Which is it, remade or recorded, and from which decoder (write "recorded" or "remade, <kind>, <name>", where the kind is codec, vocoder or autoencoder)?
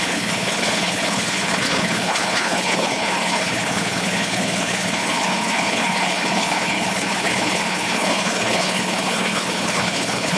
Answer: remade, codec, HILCodec